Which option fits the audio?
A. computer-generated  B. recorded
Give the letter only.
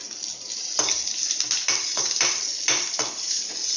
B